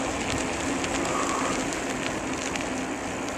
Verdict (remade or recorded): recorded